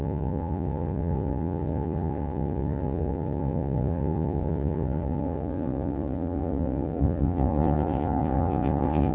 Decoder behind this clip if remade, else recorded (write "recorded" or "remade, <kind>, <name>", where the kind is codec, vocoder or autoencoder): remade, vocoder, Vocos